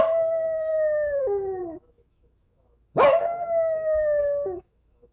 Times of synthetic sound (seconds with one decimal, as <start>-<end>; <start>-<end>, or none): 0.0-5.1